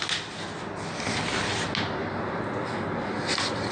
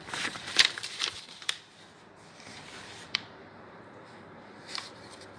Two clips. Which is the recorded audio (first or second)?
first